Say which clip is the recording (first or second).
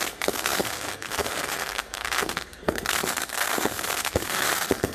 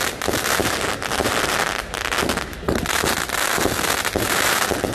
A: second